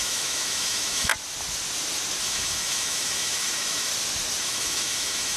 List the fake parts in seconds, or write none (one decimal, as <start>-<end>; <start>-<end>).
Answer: 0.0-1.1; 2.2-3.9; 4.4-5.4